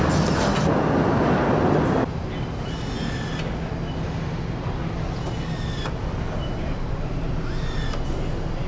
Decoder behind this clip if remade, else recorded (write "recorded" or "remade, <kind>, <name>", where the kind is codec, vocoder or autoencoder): recorded